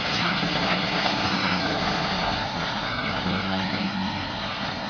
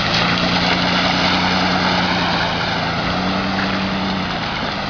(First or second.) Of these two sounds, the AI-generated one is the first